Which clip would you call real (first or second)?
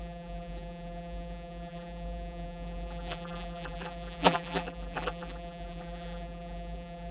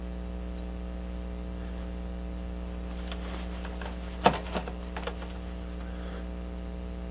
second